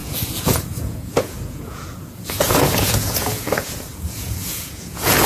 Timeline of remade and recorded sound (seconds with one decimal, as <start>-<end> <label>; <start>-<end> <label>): 0.0-5.3 remade